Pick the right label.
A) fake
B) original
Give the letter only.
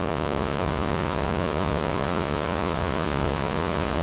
A